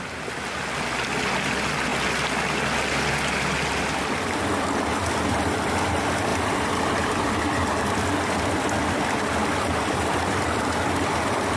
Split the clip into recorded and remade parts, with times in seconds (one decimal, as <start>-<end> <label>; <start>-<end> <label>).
0.0-6.3 recorded; 6.3-7.2 remade; 7.2-11.6 recorded